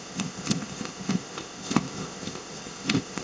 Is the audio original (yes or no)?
no